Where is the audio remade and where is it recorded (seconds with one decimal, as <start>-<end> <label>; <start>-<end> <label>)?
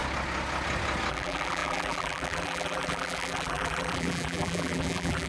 0.0-1.1 recorded; 1.1-5.3 remade